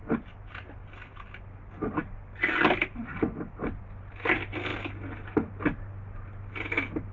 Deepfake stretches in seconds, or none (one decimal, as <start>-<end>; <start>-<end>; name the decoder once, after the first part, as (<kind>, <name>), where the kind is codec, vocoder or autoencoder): none